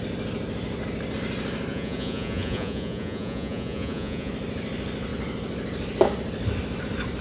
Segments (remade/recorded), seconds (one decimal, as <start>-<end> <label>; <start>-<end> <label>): 0.0-1.7 recorded; 1.7-4.3 remade; 4.3-7.2 recorded